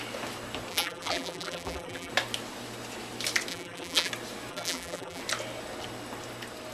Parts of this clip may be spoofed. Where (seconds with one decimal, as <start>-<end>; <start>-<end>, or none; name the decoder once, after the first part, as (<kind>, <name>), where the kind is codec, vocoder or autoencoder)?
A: 0.7-2.1 (vocoder, BigVGAN v2); 3.5-4.1; 4.5-5.2